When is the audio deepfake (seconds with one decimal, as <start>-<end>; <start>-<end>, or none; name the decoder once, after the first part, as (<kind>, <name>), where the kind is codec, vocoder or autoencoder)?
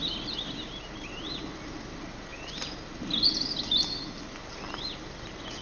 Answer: none